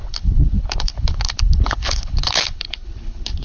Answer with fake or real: fake